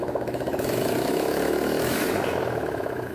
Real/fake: fake